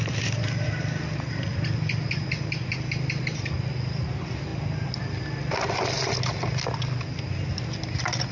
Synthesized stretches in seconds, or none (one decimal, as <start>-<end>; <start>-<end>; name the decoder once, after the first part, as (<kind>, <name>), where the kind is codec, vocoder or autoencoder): none